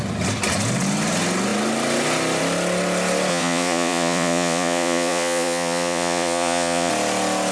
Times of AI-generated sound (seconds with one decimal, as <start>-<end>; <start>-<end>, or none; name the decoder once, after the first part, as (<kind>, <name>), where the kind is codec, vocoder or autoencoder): 3.3-6.9 (vocoder, Vocos)